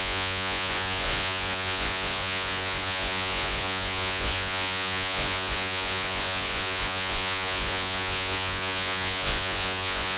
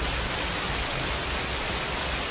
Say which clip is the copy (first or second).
first